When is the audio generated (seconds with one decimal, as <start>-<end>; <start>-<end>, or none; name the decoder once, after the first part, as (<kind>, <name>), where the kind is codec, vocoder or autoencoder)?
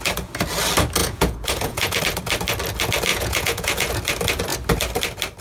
1.0-2.0 (vocoder, Vocos); 3.1-3.9